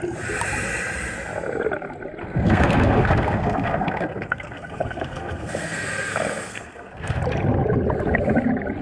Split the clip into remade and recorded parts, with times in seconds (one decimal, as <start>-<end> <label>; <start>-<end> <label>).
0.0-2.2 recorded; 2.2-7.2 remade; 7.2-8.8 recorded